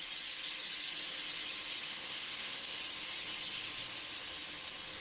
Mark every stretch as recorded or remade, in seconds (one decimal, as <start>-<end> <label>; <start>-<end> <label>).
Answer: 0.0-1.9 recorded; 1.9-2.7 remade; 2.7-5.0 recorded